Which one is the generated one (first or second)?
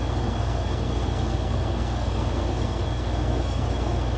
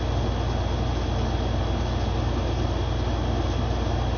first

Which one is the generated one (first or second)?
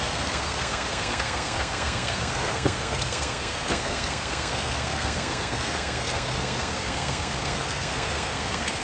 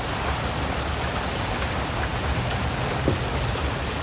first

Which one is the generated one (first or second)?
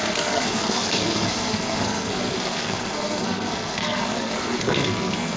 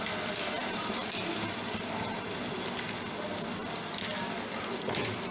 first